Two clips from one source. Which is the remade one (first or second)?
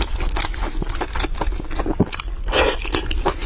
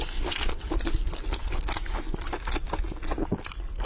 first